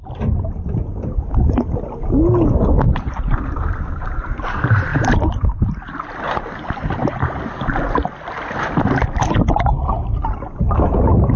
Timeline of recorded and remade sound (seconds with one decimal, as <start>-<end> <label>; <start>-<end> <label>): 0.0-4.9 recorded; 4.9-5.6 remade; 5.6-7.0 recorded; 7.0-7.7 remade; 7.7-11.4 recorded